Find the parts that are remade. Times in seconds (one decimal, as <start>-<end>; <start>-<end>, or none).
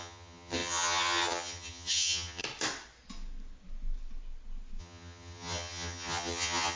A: 0.0-2.4; 4.8-6.8